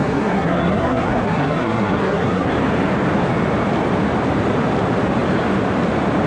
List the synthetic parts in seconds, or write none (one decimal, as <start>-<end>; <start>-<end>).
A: 0.0-2.5